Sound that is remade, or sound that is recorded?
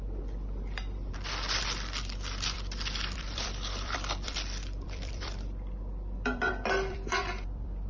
remade